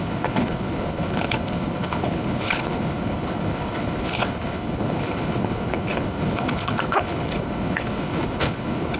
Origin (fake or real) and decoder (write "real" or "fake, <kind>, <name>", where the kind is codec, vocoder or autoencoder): fake, codec, HILCodec